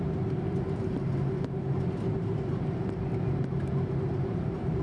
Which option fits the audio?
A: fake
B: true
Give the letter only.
B